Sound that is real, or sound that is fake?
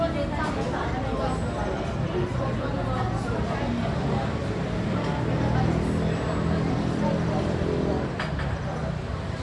real